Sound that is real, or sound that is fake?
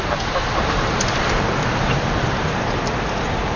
real